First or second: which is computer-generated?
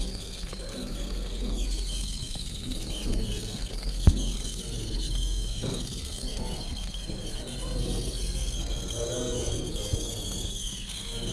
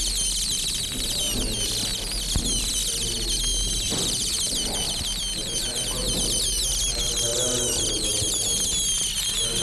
first